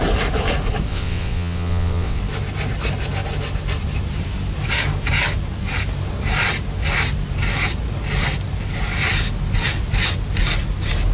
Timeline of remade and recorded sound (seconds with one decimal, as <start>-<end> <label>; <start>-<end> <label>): 0.0-0.9 recorded; 0.9-2.2 remade; 2.2-11.1 recorded

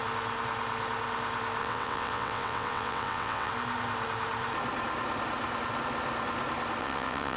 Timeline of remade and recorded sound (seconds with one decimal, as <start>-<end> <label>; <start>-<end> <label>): 0.0-1.6 recorded; 1.6-3.5 remade; 3.5-6.8 recorded; 6.8-7.4 remade

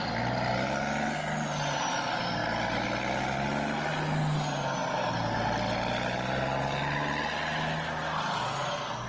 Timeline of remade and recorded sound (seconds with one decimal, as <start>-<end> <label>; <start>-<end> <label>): 0.0-9.1 recorded

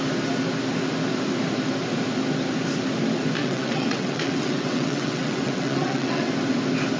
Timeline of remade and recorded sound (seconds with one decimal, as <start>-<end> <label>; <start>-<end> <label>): 0.0-3.4 recorded; 3.4-6.3 remade; 6.3-7.0 recorded

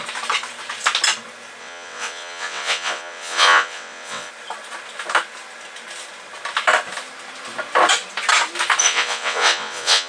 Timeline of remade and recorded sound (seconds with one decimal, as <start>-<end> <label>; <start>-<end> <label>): 0.0-1.6 recorded; 1.6-4.3 remade; 4.3-8.8 recorded; 8.8-10.1 remade

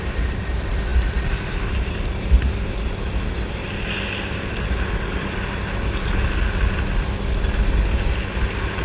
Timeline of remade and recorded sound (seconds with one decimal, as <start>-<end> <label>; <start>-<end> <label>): 0.0-8.8 recorded